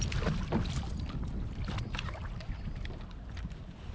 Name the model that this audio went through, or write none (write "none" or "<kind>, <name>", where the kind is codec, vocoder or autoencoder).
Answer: none